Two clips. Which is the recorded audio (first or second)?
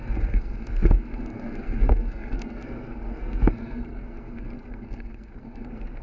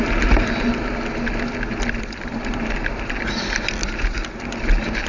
second